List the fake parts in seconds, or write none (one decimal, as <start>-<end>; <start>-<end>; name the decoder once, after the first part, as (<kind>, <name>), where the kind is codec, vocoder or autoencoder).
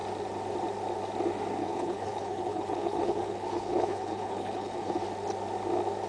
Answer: 1.6-5.0 (codec, HILCodec)